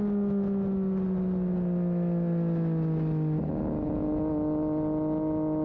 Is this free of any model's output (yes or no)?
yes